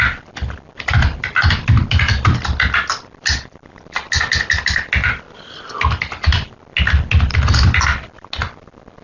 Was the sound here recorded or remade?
recorded